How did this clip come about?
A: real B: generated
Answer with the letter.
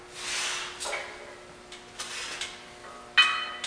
A